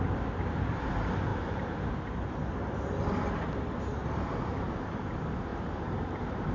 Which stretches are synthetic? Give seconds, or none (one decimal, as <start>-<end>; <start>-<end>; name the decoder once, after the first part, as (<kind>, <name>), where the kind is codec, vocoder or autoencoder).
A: 1.3-1.9 (vocoder, BigVGAN v2); 3.9-5.0; 5.5-6.5